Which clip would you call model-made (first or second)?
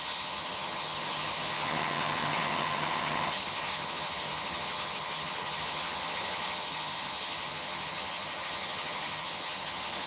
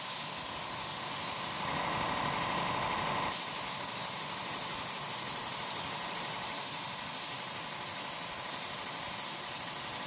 first